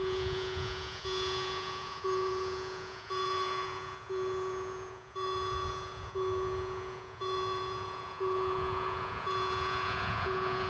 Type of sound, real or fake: fake